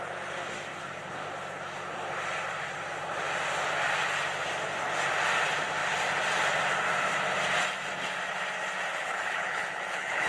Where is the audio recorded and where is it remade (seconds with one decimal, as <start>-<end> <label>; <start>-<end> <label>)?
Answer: 0.0-8.9 recorded; 8.9-10.3 remade